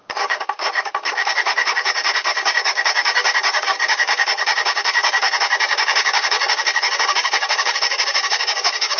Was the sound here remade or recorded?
remade